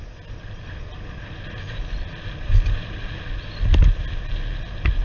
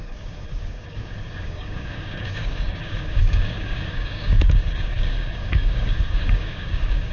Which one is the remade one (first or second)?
second